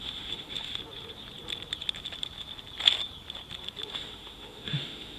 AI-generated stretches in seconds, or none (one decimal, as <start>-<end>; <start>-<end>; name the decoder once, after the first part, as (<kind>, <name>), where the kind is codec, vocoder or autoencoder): 0.0-0.8 (autoencoder, DAC-VAE); 3.9-5.2